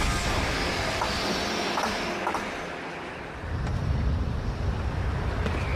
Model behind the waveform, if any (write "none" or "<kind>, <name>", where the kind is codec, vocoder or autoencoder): none